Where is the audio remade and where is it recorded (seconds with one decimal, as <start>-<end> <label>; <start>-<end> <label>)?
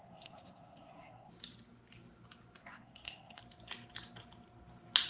0.0-1.3 remade; 1.3-2.6 recorded; 2.6-3.4 remade; 3.4-5.1 recorded